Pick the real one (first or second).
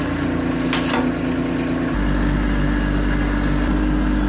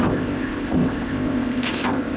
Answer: first